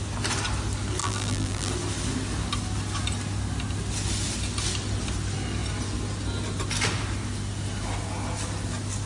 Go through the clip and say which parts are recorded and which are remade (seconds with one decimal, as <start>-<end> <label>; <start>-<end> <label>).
0.0-1.0 recorded; 1.0-1.7 remade; 1.7-9.1 recorded